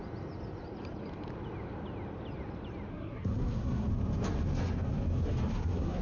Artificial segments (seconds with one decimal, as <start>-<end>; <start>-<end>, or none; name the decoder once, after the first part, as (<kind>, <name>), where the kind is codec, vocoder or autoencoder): 2.9-3.9 (codec, SNAC); 5.5-6.0